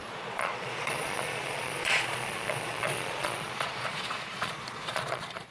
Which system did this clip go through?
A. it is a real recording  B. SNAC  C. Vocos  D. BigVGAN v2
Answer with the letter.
C